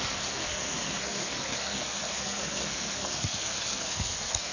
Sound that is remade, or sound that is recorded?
remade